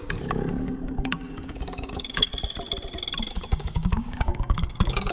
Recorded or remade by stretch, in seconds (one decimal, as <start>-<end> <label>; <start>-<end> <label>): 0.0-2.3 remade; 2.3-3.3 recorded; 3.3-5.1 remade

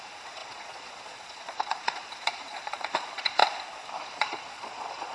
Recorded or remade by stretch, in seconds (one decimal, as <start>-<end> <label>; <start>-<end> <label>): 0.0-3.4 remade; 3.4-4.0 recorded; 4.0-5.1 remade

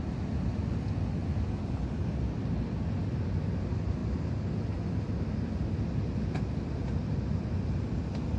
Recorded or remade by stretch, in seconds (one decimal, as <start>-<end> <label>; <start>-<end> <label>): 0.0-8.4 recorded